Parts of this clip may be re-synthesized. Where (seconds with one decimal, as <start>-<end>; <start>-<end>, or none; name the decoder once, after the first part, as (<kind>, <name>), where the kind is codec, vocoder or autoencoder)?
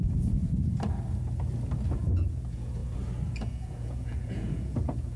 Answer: 0.0-0.4 (vocoder, Vocos); 1.9-2.8; 3.4-5.2